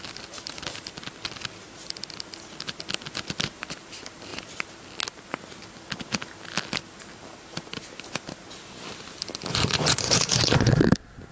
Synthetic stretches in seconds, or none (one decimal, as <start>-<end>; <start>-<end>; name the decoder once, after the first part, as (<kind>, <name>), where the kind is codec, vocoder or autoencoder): 9.5-10.8 (vocoder, Vocos)